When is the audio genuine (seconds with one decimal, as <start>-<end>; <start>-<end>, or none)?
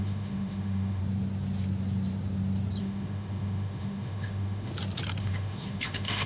1.0-2.8; 4.7-5.2